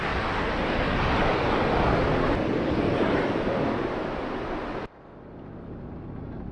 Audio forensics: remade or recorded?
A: recorded